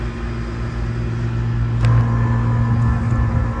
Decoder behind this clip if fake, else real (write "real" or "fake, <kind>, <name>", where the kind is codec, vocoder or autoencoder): real